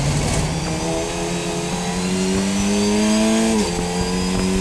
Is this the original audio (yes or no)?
yes